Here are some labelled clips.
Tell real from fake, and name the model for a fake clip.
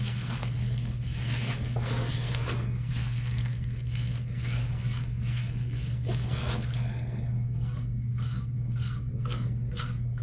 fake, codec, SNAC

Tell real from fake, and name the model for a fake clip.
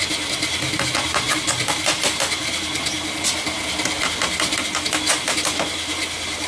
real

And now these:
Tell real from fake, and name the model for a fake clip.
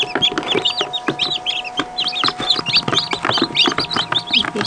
real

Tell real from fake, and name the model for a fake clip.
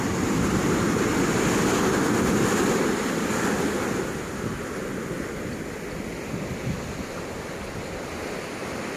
real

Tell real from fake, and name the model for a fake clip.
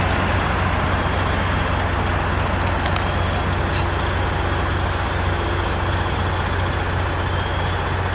real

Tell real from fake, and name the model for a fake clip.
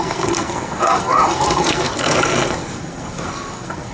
fake, codec, SNAC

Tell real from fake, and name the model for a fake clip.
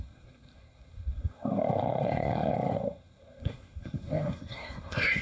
fake, codec, SNAC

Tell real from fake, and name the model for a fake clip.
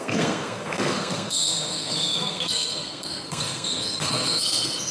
fake, codec, SNAC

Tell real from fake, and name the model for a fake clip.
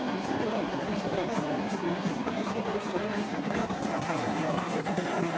fake, codec, SNAC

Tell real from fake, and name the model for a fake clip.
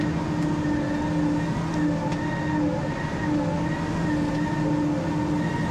real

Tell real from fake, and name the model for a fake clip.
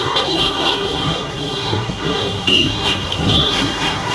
fake, codec, SNAC